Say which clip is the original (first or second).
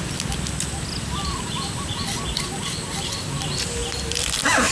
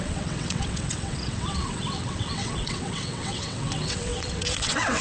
first